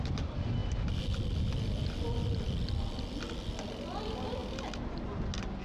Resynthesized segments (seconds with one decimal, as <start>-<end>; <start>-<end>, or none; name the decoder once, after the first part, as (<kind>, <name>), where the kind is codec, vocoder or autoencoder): none